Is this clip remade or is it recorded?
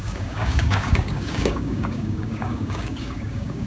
remade